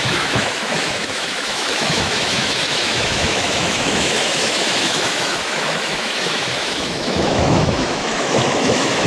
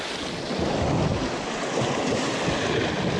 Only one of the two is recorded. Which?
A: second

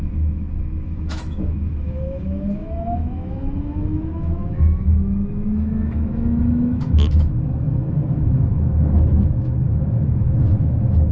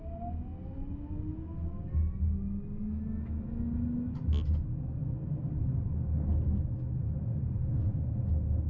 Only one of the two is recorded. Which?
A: second